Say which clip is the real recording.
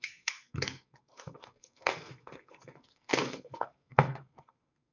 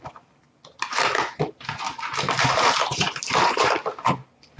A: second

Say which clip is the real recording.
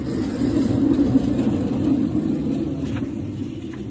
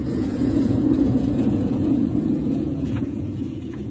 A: first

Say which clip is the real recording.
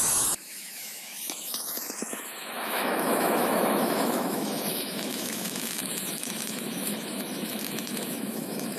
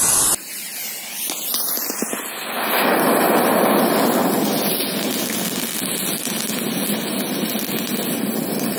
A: second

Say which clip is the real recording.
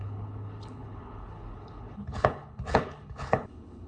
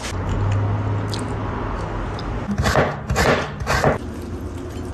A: second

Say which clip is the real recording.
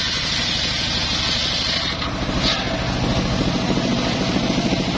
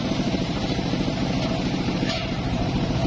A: first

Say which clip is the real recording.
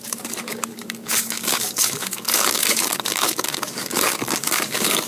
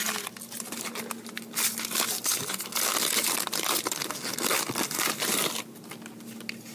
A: second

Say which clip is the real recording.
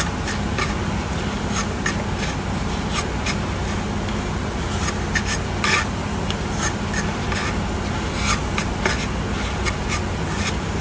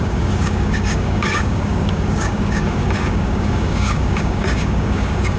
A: first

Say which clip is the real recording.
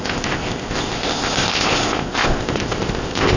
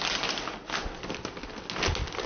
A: second